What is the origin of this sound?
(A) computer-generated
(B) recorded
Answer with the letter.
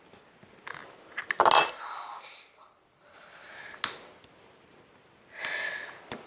B